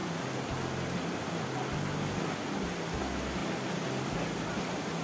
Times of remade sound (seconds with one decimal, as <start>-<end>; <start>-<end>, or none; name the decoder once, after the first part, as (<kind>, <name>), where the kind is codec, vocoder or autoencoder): none